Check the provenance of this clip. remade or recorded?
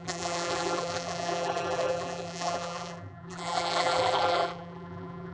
remade